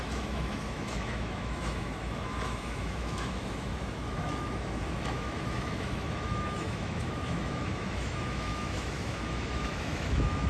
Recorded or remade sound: remade